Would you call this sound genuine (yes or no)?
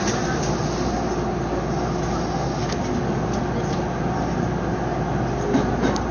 yes